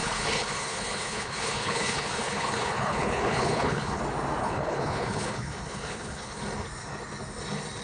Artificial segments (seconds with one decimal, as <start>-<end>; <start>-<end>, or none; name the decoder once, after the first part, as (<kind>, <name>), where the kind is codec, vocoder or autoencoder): 0.0-4.0 (codec, HILCodec); 4.4-6.4